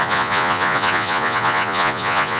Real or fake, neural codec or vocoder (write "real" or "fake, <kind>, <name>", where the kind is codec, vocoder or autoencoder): fake, vocoder, Vocos